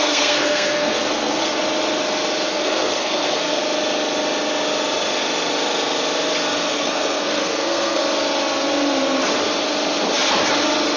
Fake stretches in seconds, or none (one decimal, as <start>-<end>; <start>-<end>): 0.0-1.6; 2.5-3.6; 6.7-8.0